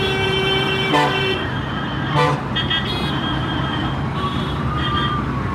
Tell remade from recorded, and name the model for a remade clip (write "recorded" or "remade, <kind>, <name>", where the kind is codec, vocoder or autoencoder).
remade, vocoder, BigVGAN v2